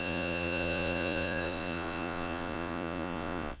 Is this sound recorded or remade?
remade